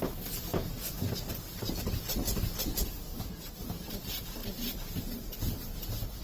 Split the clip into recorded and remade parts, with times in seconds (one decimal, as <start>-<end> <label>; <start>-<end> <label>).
0.0-0.5 recorded; 0.5-1.0 remade; 1.0-3.1 recorded; 3.1-3.9 remade; 3.9-6.2 recorded